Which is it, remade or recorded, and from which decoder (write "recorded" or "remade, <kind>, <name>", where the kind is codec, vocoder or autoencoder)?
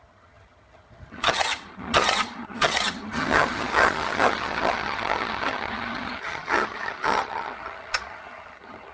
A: remade, vocoder, HiFi-GAN